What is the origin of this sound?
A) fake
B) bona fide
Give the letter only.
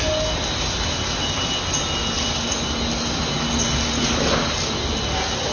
B